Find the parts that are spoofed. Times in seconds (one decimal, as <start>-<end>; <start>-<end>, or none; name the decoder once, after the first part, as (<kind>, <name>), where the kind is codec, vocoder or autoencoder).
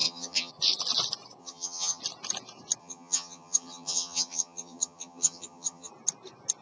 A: 0.0-0.5 (vocoder, HiFi-GAN); 1.4-2.0; 2.8-5.9